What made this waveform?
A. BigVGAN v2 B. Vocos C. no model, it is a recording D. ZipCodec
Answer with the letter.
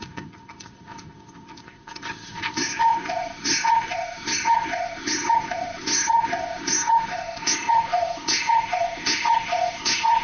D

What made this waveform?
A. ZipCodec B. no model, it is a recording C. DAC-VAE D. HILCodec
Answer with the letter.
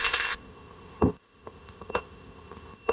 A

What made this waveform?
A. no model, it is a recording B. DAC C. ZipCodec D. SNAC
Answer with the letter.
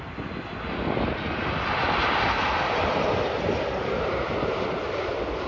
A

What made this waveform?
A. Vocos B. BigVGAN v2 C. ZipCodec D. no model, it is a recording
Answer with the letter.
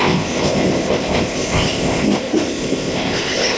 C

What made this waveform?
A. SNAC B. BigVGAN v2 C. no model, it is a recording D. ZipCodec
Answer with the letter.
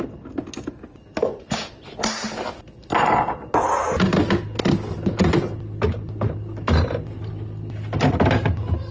C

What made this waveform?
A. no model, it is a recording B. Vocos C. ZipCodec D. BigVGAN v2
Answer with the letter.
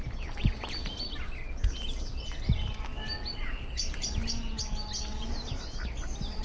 A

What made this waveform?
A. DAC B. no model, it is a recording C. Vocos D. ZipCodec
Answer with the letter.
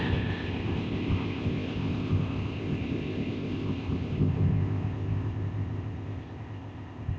D